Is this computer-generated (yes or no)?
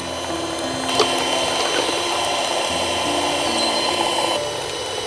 no